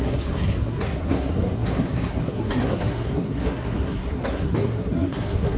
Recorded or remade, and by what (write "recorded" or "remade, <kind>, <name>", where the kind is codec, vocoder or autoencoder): remade, codec, SNAC